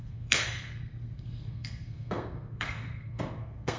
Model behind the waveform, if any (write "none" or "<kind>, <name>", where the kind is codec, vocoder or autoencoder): codec, SNAC